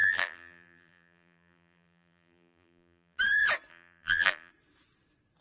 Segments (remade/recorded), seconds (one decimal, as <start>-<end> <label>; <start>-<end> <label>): 0.0-3.2 remade; 3.2-3.7 recorded; 3.7-4.5 remade; 4.5-5.4 recorded